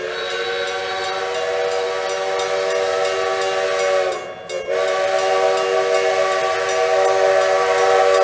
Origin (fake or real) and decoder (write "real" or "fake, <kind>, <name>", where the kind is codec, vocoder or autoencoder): real